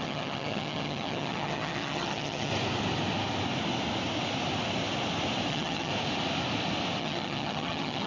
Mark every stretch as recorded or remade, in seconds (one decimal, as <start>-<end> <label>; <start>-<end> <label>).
0.0-2.5 remade; 2.5-5.5 recorded; 5.5-5.9 remade; 5.9-7.0 recorded; 7.0-8.1 remade

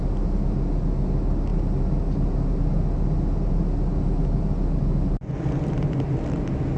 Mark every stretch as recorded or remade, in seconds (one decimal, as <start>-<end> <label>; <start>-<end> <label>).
0.0-6.8 recorded

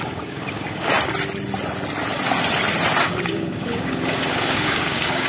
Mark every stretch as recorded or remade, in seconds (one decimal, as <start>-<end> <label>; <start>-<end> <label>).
0.0-0.9 remade; 0.9-3.0 recorded; 3.0-5.3 remade